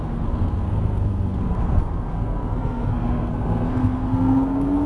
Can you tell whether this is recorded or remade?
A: remade